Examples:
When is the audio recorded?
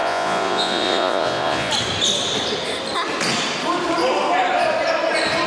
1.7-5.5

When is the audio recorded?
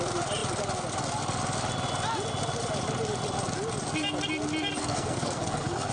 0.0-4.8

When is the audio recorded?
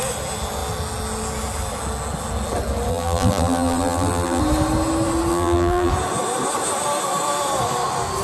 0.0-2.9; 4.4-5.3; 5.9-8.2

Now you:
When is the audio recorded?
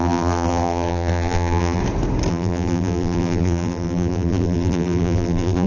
1.8-2.3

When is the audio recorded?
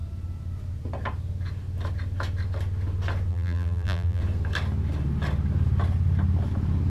0.0-3.3; 4.2-6.9